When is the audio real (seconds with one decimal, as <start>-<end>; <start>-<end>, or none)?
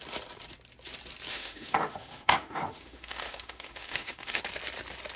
0.0-1.3; 4.4-5.2